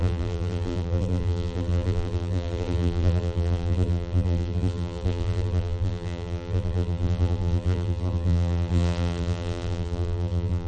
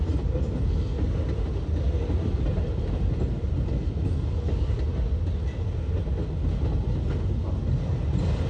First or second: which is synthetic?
first